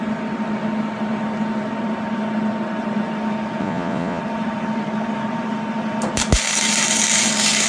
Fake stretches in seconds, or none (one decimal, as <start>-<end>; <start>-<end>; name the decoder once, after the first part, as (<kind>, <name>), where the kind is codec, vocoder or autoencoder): 3.6-4.2 (vocoder, Vocos)